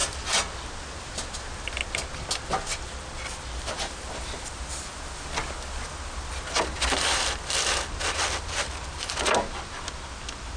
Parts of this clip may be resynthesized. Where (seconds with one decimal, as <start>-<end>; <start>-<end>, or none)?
none